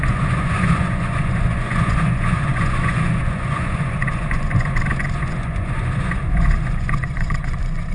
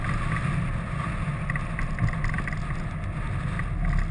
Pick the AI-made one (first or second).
first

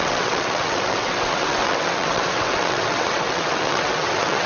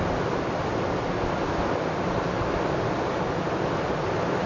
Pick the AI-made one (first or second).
first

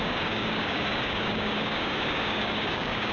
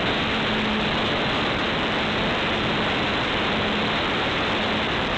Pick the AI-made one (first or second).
first